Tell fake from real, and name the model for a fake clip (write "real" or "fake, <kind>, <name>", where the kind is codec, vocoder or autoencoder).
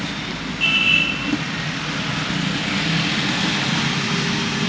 real